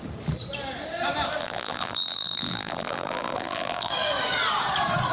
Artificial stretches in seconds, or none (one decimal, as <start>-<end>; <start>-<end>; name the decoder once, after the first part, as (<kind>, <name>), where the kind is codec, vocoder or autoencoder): 1.4-3.9 (vocoder, BigVGAN v2)